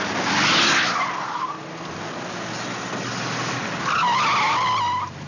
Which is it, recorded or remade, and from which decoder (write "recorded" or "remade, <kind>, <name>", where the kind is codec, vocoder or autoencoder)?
recorded